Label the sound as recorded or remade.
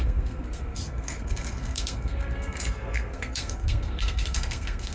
remade